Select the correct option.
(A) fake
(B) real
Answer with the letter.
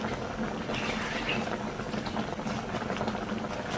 B